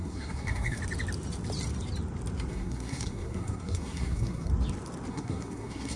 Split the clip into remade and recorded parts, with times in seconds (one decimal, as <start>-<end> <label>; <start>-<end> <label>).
0.0-0.8 remade; 0.8-2.5 recorded; 2.5-4.5 remade; 4.5-5.1 recorded; 5.1-6.0 remade